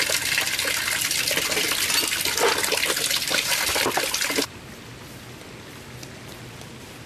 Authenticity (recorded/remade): recorded